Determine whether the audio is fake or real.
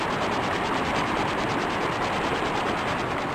real